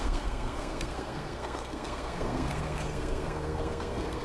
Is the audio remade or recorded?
remade